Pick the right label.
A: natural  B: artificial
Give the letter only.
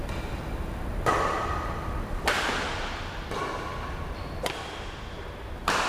A